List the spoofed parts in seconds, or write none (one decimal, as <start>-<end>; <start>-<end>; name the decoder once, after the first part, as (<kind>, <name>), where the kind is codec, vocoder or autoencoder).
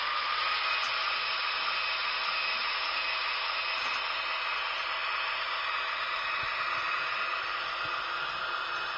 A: none